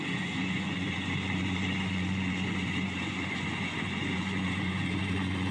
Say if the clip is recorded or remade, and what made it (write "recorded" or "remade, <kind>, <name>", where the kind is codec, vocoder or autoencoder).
remade, vocoder, Vocos